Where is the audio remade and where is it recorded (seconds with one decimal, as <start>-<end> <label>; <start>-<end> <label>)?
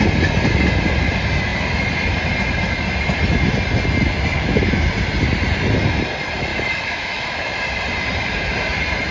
0.0-4.3 recorded; 4.3-4.9 remade; 4.9-6.5 recorded; 6.5-7.3 remade; 7.3-9.1 recorded